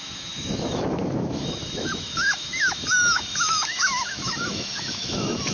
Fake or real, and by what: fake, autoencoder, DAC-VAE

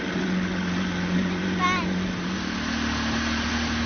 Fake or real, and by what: real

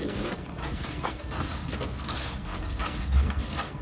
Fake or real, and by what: fake, codec, SNAC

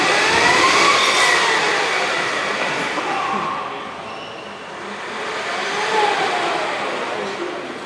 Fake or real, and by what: real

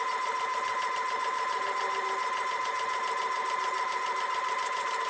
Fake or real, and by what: real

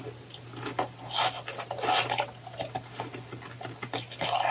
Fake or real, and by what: real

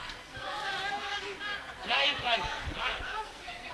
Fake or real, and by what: fake, codec, SNAC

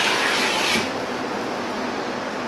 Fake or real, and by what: real